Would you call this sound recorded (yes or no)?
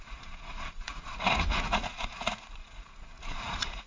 no